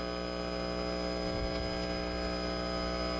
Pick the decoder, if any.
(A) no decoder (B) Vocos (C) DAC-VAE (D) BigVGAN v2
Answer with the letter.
A